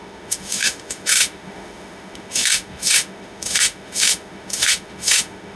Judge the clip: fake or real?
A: fake